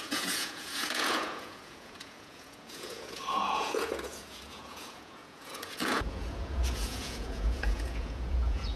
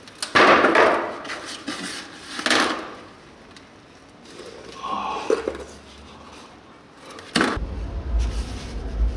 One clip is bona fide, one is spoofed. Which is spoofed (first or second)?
first